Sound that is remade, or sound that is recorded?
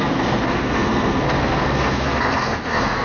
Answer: remade